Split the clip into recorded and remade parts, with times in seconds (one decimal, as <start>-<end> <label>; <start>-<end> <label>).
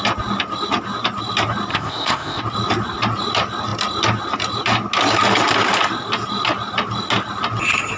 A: 0.0-1.7 recorded; 1.7-2.4 remade; 2.4-8.0 recorded